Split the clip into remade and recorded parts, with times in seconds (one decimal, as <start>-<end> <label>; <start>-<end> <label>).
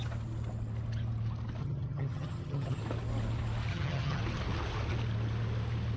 0.0-1.6 recorded; 1.6-2.8 remade; 2.8-3.7 recorded; 3.7-4.2 remade; 4.2-6.0 recorded